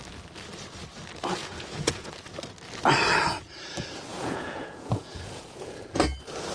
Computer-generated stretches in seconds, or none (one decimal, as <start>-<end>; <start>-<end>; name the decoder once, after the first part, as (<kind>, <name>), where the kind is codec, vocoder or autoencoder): 1.4-2.1 (vocoder, Vocos); 4.1-5.9